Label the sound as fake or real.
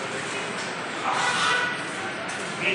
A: real